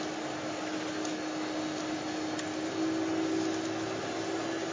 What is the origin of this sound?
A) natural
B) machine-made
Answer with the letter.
A